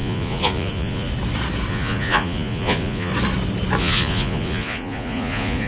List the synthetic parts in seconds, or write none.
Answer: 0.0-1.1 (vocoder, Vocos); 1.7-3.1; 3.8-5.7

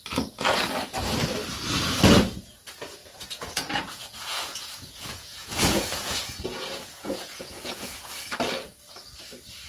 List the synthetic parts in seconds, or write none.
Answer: 3.0-8.1 (vocoder, Vocos)

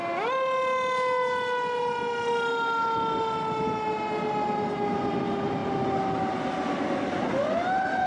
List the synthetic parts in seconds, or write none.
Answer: none

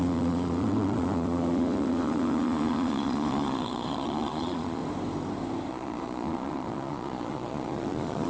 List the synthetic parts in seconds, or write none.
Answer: 0.0-4.8 (vocoder, Vocos); 5.7-8.3

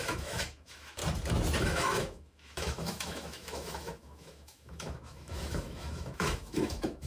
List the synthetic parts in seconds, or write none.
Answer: 0.0-1.0 (autoencoder, DAC-VAE); 1.6-7.1